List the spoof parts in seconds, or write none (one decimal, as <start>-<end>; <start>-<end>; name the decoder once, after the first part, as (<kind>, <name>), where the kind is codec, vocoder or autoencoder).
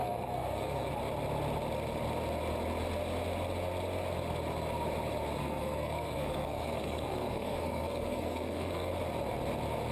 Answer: 0.0-0.9 (codec, SNAC); 5.4-8.9